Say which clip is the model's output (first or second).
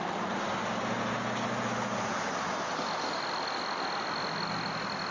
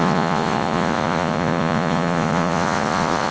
second